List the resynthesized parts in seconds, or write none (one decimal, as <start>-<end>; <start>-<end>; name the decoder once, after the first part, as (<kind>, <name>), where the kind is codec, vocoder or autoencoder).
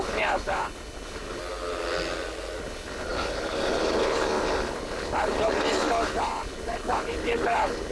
0.0-1.4 (codec, HILCodec); 2.6-7.9